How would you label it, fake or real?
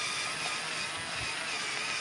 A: real